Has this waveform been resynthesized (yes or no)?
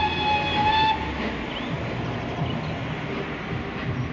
no